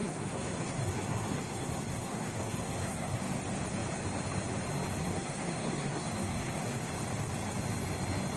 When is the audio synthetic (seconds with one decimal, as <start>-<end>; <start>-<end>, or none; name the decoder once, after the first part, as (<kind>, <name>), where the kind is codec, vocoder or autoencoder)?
0.0-3.2 (codec, SNAC); 5.0-6.9

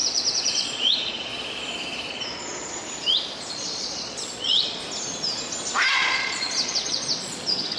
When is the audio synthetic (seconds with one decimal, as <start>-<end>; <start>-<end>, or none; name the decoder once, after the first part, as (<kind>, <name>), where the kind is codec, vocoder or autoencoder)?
0.0-1.3 (vocoder, Vocos); 2.1-2.8; 3.5-4.8; 5.9-7.8

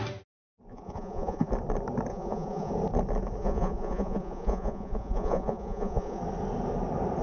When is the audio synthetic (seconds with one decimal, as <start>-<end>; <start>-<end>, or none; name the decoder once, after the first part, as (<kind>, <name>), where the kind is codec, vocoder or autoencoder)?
0.7-1.5 (vocoder, Vocos); 2.1-2.7; 3.4-6.2

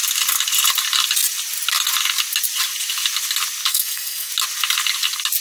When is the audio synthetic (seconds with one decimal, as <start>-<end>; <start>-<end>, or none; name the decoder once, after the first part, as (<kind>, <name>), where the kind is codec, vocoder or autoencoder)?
3.7-4.3 (codec, SNAC)

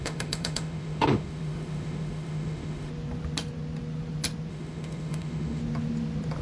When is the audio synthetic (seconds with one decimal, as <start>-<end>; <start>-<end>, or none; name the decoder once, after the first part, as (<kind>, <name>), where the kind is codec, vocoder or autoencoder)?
0.0-2.9 (autoencoder, DAC-VAE); 4.5-5.6

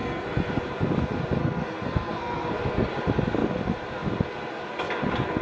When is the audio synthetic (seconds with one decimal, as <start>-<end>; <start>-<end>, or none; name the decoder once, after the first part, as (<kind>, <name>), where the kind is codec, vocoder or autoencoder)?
0.0-0.5 (codec, SNAC); 1.4-2.5